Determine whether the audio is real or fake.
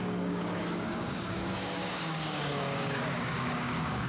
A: fake